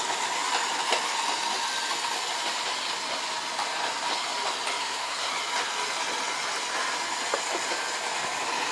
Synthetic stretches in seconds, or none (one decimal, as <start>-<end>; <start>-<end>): 4.8-5.3

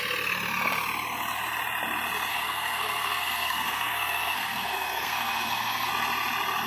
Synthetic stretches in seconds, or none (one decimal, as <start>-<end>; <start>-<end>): 2.3-5.9

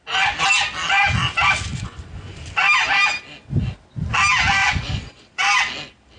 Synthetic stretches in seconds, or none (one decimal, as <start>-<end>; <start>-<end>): 1.7-2.4; 4.6-5.4